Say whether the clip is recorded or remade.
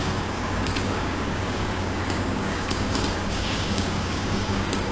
remade